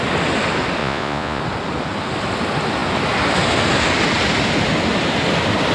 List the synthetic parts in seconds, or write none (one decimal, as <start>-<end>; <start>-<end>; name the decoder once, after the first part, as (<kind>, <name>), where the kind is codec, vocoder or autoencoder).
0.8-1.4 (vocoder, Vocos)